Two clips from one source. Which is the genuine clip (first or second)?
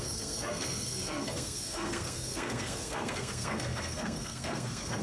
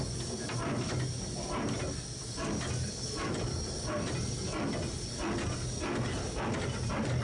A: second